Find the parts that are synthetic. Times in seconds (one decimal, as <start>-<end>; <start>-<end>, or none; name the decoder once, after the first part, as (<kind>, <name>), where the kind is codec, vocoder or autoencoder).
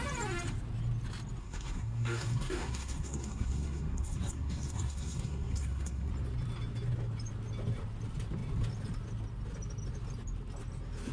1.4-6.1 (codec, SNAC)